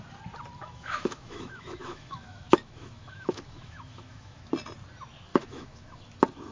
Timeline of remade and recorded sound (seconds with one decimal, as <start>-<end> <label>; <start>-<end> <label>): 0.0-0.6 recorded; 0.6-4.5 remade; 4.5-5.3 recorded; 5.3-6.0 remade; 6.0-6.5 recorded